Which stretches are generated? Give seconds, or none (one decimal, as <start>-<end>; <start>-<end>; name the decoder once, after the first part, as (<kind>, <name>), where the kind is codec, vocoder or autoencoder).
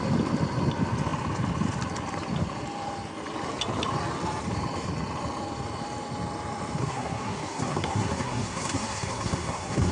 6.8-9.9 (codec, SNAC)